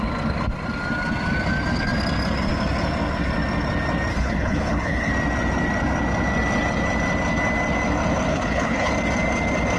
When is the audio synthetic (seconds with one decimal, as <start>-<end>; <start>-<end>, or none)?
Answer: 4.1-5.1; 8.3-8.9